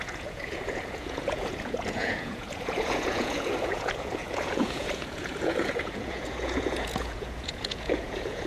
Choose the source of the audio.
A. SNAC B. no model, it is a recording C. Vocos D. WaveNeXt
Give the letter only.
C